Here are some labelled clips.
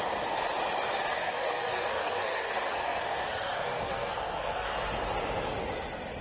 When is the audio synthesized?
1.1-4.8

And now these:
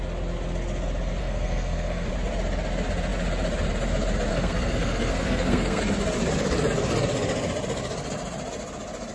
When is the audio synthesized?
1.2-2.1; 4.3-5.8

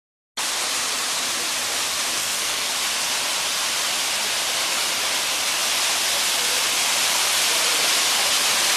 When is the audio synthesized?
2.2-2.7

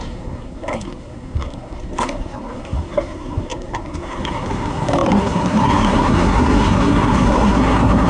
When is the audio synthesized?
0.0-8.1

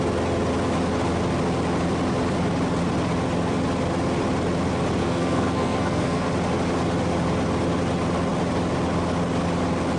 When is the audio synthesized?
5.0-6.3

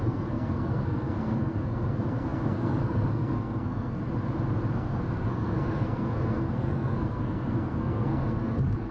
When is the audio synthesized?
0.0-4.0; 4.7-8.9

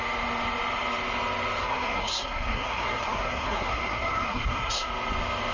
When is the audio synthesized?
1.6-4.9